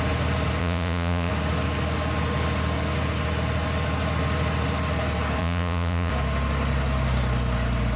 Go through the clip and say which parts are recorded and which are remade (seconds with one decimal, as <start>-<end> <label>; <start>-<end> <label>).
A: 0.0-0.6 recorded; 0.6-1.3 remade; 1.3-5.4 recorded; 5.4-6.1 remade; 6.1-8.0 recorded